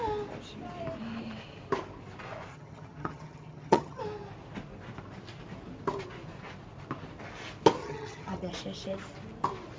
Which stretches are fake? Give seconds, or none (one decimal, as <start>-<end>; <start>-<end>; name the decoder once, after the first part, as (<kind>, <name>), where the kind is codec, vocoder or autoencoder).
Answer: 2.5-4.0 (vocoder, HiFi-GAN); 7.8-8.5